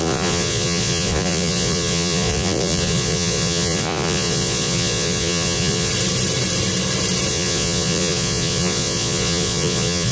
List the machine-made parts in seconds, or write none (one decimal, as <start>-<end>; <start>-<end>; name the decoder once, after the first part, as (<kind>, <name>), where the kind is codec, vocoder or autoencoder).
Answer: 0.0-5.9 (vocoder, Vocos); 7.3-10.1